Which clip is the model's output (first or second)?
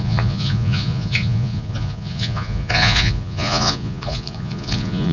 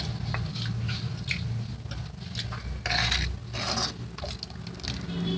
first